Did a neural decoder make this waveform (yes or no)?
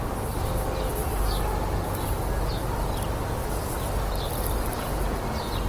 no